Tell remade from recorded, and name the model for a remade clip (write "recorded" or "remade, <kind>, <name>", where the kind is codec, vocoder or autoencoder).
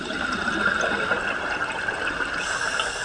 recorded